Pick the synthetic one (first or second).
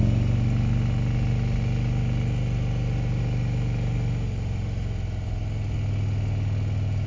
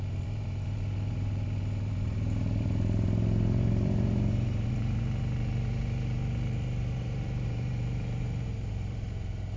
second